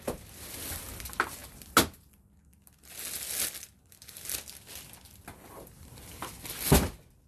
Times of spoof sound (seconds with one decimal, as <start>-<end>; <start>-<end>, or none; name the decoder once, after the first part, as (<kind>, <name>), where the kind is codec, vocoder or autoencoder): none